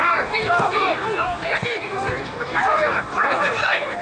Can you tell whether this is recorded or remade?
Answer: remade